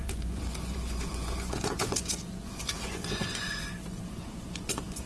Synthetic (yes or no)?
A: yes